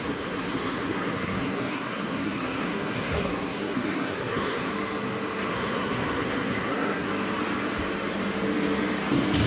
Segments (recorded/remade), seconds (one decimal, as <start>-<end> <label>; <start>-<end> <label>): 0.0-4.7 remade; 4.7-5.5 recorded; 5.5-7.1 remade; 7.1-9.5 recorded